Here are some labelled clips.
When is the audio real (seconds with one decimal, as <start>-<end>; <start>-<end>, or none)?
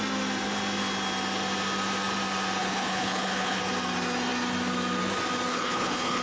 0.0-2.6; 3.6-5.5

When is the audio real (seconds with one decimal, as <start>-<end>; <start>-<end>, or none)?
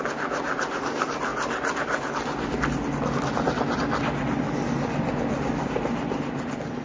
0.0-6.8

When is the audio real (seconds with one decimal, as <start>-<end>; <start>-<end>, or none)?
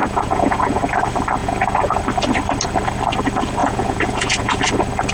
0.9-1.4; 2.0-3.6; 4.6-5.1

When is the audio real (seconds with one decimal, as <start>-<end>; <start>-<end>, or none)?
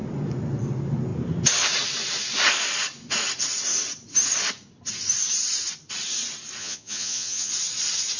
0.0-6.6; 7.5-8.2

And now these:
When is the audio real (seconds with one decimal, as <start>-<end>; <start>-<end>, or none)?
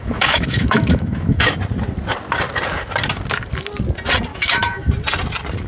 1.6-4.3; 4.9-5.7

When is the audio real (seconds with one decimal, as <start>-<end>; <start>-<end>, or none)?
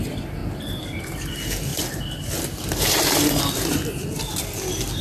0.0-5.0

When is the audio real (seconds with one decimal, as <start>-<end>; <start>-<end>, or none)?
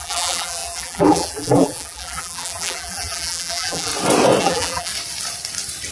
3.9-4.4; 4.9-5.9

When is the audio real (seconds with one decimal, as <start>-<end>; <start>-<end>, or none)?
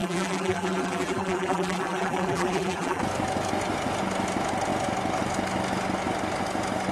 3.0-6.9